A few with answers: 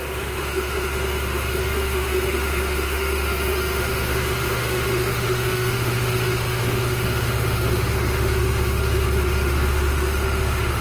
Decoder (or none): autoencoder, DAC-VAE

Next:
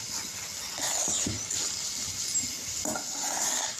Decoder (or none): none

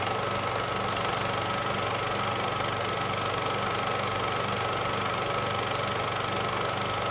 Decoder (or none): none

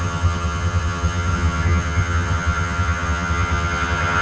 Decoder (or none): vocoder, HiFi-GAN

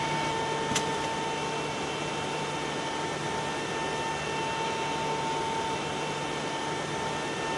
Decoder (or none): none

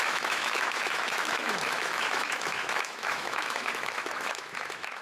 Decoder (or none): autoencoder, DAC-VAE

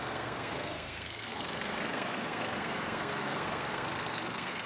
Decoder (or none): codec, SNAC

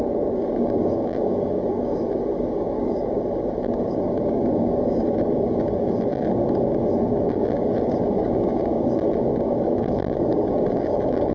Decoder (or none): codec, DAC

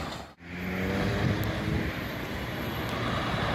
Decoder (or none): none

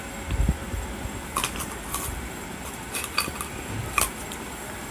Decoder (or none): none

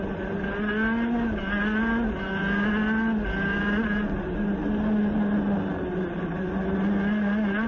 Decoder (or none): none